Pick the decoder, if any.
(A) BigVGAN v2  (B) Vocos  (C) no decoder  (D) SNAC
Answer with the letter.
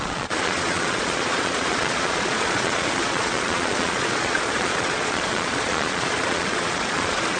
B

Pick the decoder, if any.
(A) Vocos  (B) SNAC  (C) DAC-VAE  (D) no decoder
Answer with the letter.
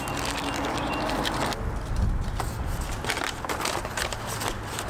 D